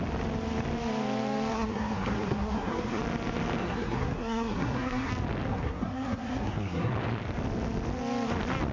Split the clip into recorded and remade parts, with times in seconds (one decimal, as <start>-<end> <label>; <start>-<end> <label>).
0.0-1.5 recorded; 1.5-3.0 remade; 3.0-3.6 recorded; 3.6-5.1 remade; 5.1-5.5 recorded; 5.5-6.9 remade; 6.9-8.7 recorded